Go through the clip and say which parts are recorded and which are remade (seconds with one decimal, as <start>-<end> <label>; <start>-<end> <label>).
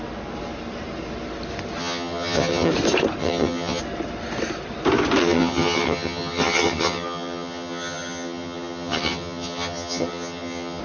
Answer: 0.0-1.8 recorded; 1.8-2.7 remade; 2.7-3.2 recorded; 3.2-3.8 remade; 3.8-5.2 recorded; 5.2-10.8 remade